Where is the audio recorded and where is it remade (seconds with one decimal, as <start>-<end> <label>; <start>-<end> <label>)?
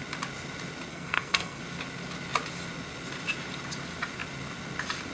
0.0-0.9 recorded; 0.9-1.6 remade; 1.6-5.1 recorded